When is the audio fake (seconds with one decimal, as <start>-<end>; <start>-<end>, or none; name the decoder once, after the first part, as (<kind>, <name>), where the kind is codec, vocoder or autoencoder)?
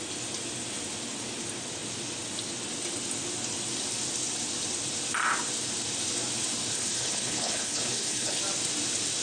6.7-8.4 (codec, HILCodec)